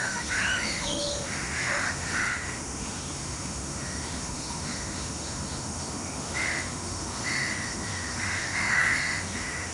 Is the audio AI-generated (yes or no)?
yes